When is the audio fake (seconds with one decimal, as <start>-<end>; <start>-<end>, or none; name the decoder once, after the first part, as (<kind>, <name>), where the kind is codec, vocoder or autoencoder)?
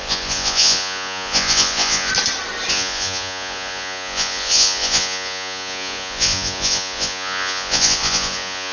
0.0-2.1 (vocoder, Vocos); 2.7-8.7